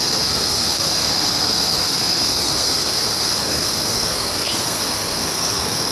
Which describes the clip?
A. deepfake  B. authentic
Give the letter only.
A